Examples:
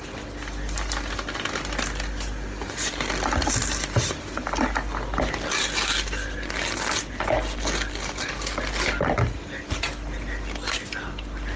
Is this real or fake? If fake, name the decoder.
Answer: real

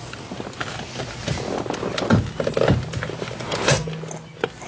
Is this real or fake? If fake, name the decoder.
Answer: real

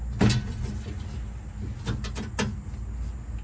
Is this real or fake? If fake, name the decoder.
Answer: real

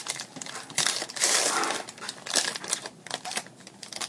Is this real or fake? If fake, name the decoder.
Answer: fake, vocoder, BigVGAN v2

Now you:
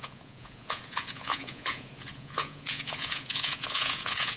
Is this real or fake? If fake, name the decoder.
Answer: fake, vocoder, Vocos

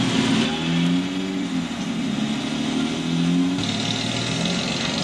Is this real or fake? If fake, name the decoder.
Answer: real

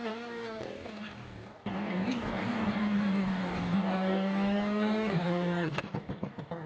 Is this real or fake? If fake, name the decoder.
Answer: fake, codec, DAC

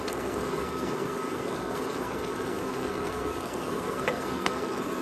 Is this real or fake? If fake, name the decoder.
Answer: fake, codec, SNAC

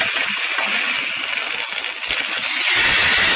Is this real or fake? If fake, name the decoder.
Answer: real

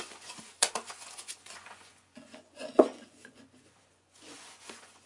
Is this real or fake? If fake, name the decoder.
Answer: fake, vocoder, Vocos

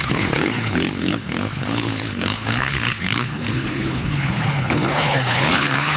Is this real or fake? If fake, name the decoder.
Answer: fake, codec, HILCodec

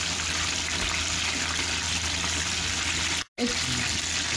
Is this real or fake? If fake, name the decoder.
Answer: real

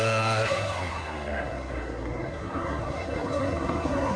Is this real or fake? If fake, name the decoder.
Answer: fake, codec, SNAC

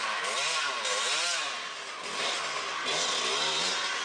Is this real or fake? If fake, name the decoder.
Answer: real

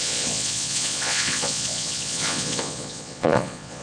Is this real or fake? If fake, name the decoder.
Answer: fake, vocoder, Vocos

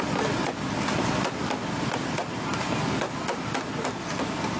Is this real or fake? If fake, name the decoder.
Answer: real